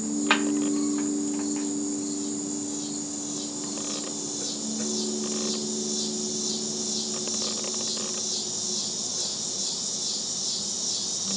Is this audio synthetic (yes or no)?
no